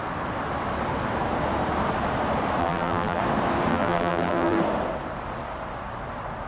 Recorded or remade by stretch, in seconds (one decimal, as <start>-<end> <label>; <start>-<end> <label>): 0.0-2.6 recorded; 2.6-3.2 remade; 3.2-3.7 recorded; 3.7-4.6 remade; 4.6-6.5 recorded